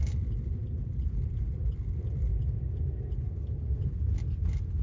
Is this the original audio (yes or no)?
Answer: yes